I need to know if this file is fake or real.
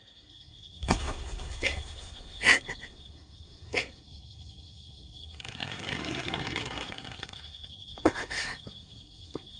fake